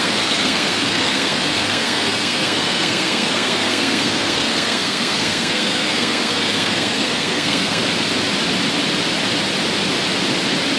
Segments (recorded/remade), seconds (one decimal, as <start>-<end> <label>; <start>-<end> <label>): 0.0-7.8 remade; 7.8-10.8 recorded